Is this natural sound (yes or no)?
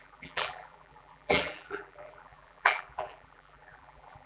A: no